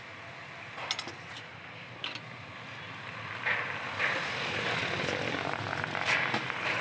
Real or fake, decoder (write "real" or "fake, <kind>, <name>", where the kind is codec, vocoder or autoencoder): real